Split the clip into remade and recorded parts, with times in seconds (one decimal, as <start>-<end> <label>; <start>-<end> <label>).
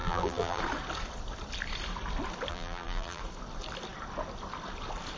0.0-0.6 remade; 0.6-2.5 recorded; 2.5-3.2 remade; 3.2-5.2 recorded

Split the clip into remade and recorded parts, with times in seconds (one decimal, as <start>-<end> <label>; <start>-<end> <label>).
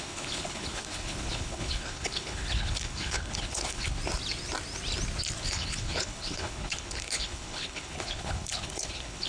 0.0-4.0 remade; 4.0-5.4 recorded; 5.4-9.3 remade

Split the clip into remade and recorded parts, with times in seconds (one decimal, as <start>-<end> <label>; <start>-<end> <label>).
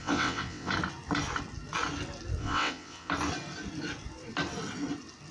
0.0-0.7 remade; 0.7-2.4 recorded; 2.4-3.1 remade; 3.1-5.3 recorded